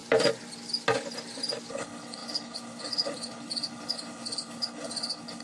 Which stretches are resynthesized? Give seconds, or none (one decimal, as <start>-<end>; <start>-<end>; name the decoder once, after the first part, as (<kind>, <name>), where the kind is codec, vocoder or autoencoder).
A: 1.7-5.4 (codec, HILCodec)